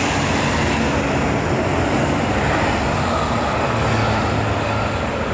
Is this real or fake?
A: real